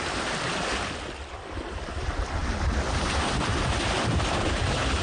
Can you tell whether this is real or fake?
real